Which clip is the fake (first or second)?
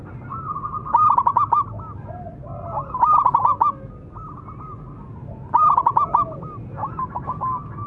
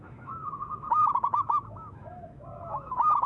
second